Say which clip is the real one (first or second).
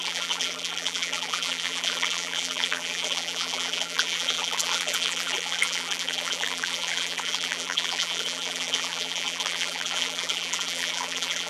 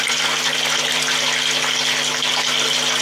second